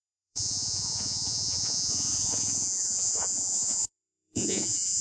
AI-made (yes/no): yes